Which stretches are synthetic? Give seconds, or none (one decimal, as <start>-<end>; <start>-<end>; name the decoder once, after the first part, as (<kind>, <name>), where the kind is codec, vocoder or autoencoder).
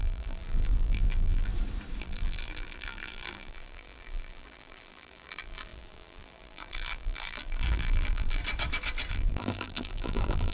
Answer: 0.0-1.5 (vocoder, BigVGAN v2); 2.0-8.4; 9.1-10.5